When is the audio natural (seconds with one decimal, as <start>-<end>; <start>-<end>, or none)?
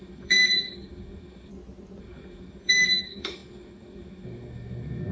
1.5-2.0